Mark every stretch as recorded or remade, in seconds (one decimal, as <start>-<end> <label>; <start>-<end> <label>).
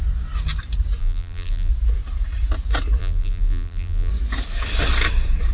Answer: 0.0-1.0 recorded; 1.0-1.7 remade; 1.7-3.0 recorded; 3.0-4.1 remade; 4.1-5.5 recorded